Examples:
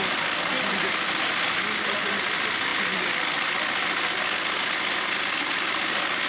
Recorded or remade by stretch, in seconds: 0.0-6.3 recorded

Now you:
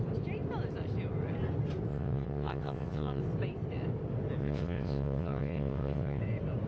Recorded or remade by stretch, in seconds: 0.0-1.9 recorded; 1.9-3.2 remade; 3.2-4.4 recorded; 4.4-6.2 remade; 6.2-6.7 recorded